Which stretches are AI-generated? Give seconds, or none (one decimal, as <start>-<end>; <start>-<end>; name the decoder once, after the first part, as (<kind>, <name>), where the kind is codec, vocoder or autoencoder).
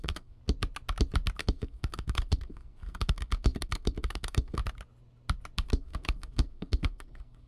0.0-0.4 (codec, SNAC); 1.4-4.6; 5.7-7.5